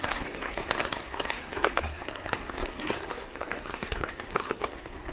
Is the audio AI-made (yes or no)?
yes